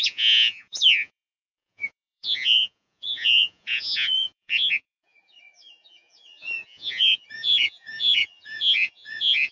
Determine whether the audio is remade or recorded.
remade